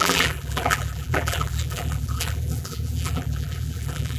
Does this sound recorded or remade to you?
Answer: remade